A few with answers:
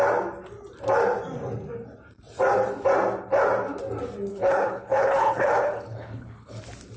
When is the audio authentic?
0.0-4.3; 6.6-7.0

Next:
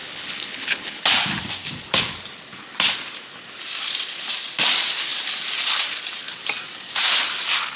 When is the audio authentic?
1.0-7.8